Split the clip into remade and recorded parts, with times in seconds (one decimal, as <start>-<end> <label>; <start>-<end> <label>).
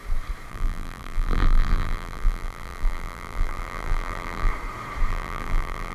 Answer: 0.0-0.5 recorded; 0.5-4.5 remade; 4.5-5.1 recorded; 5.1-5.9 remade